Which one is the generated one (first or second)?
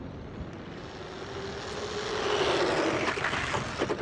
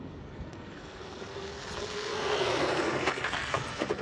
second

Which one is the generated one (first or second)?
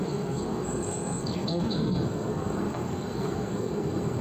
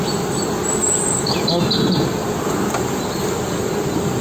first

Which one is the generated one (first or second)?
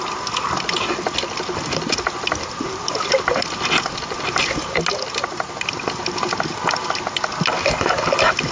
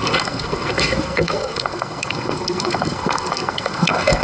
second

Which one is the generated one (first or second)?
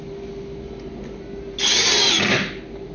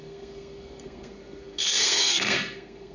second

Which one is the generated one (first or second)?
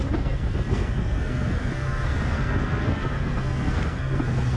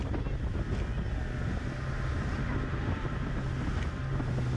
first